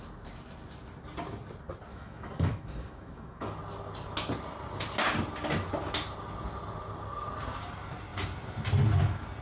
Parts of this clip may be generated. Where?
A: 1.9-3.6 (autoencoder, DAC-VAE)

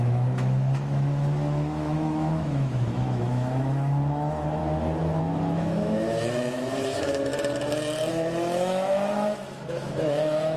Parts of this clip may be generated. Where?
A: 0.0-4.6 (autoencoder, DAC-VAE); 5.2-7.3; 8.1-10.6

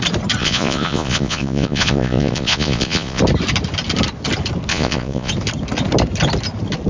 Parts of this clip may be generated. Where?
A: 0.4-3.2 (vocoder, Vocos); 4.7-5.3

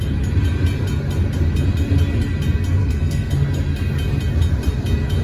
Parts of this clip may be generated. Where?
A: 2.8-3.3 (codec, SNAC)